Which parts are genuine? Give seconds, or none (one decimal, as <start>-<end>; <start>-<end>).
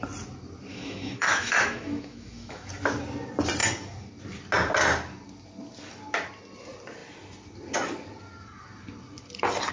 0.0-0.7; 2.7-9.7